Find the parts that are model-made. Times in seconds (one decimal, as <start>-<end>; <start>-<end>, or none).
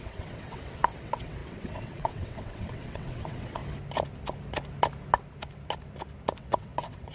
0.0-3.6; 6.4-7.1